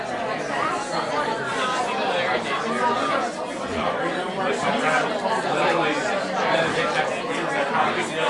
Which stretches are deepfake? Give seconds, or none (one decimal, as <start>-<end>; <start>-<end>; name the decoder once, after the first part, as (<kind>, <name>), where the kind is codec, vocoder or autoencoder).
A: 3.7-4.4 (vocoder, Vocos)